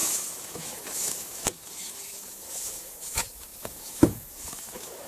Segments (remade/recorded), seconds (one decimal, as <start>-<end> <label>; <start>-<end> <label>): 0.0-5.1 remade